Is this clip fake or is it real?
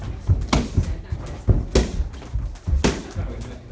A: real